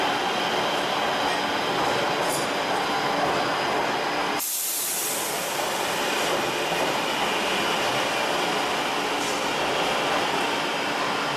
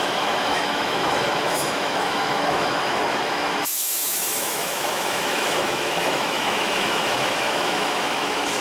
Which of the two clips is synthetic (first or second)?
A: second